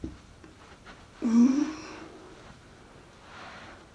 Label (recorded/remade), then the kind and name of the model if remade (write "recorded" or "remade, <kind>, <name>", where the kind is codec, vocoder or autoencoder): recorded